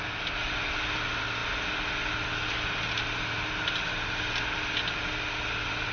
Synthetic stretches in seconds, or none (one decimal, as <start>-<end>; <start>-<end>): none

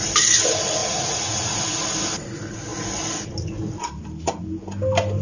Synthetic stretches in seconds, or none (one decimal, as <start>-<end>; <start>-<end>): 0.8-1.6

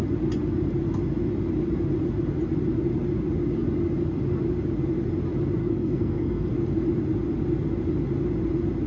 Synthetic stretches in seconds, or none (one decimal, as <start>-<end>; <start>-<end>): 5.6-6.5

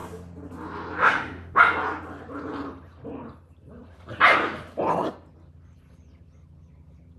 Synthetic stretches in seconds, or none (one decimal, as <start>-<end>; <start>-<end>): 1.0-1.6

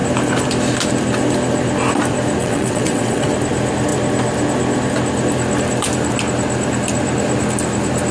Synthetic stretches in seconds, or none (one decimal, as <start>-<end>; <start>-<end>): 2.4-3.3